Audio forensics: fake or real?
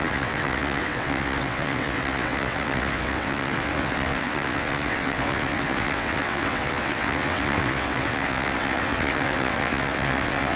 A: fake